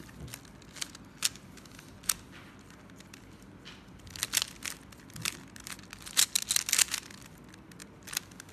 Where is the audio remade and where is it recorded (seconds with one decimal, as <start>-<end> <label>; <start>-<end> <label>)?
0.0-8.5 recorded